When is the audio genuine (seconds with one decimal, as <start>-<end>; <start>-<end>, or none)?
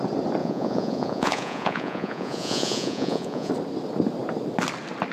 0.0-0.4; 3.5-5.1